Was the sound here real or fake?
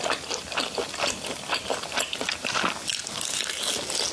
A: real